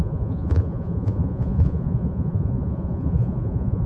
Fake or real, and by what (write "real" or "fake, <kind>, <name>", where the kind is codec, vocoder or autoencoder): fake, vocoder, Vocos